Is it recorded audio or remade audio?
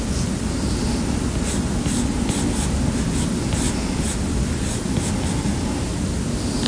recorded